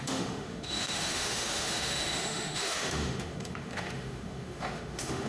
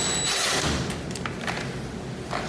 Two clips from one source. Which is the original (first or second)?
second